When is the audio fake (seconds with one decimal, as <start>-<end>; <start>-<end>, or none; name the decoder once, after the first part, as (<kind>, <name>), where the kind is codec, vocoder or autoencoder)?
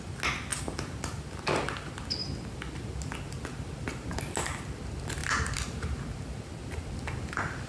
none